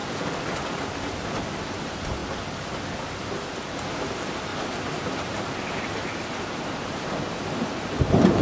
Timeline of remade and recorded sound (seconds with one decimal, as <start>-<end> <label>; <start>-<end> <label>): 0.0-4.5 recorded; 4.5-8.4 remade